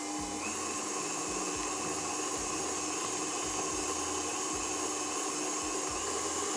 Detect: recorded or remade recorded